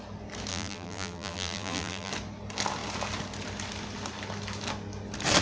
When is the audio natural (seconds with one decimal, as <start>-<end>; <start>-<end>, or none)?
0.0-0.5; 2.1-5.4